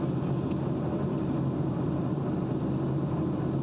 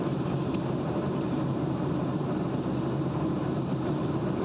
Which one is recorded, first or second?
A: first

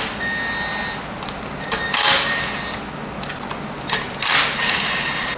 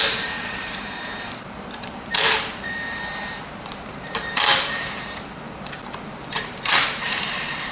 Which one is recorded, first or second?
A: first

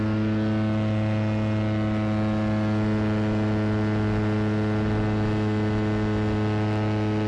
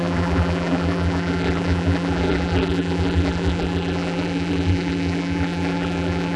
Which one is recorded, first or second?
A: first